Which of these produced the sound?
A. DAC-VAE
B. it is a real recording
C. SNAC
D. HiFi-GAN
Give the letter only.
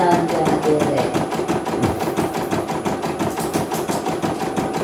B